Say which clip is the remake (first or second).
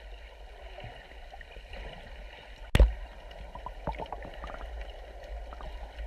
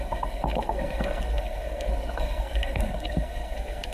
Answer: second